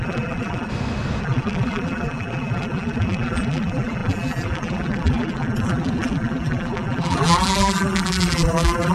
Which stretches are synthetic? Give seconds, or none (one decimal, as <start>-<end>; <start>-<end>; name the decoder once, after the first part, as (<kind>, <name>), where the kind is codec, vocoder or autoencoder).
0.0-0.7 (vocoder, BigVGAN v2); 1.2-8.9